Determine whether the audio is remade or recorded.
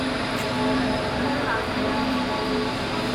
remade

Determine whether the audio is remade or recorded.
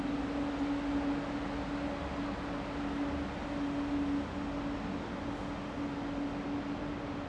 recorded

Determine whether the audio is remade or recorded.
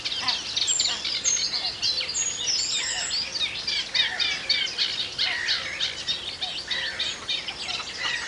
recorded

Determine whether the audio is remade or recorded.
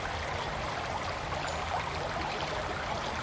recorded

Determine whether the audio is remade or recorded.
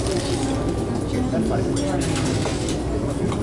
recorded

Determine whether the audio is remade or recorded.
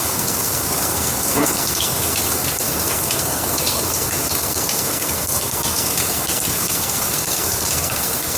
remade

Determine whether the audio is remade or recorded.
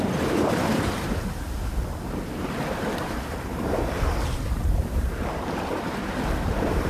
remade